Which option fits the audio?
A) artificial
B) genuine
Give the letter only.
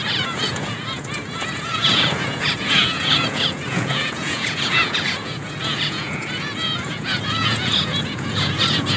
A